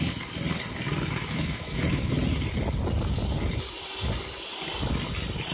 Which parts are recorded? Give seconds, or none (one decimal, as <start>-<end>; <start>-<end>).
0.0-1.2; 2.1-5.5